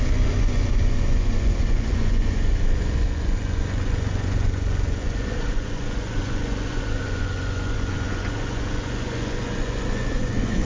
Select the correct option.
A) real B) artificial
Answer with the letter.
B